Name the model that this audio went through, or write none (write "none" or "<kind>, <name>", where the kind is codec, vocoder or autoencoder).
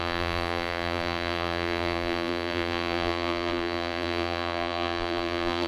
vocoder, BigVGAN v2